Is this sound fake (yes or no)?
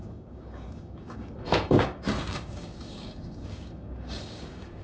yes